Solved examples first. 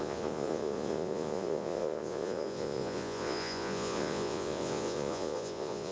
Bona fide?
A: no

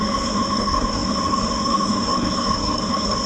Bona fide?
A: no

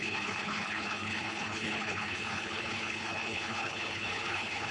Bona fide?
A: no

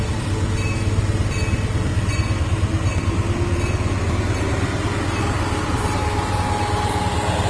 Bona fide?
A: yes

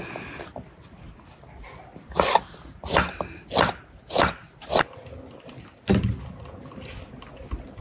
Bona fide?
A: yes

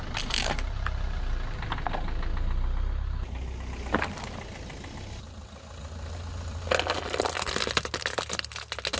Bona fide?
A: yes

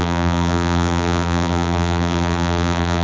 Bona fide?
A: no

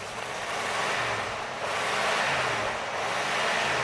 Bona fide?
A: yes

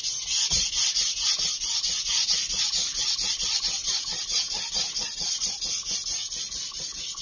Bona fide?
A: yes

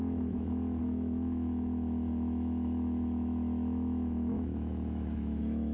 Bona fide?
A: no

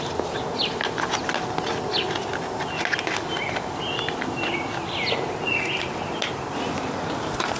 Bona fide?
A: yes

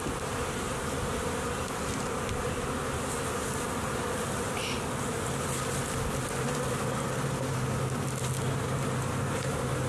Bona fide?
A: yes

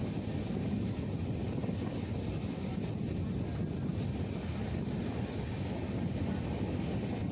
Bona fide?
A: yes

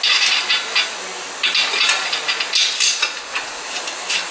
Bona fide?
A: yes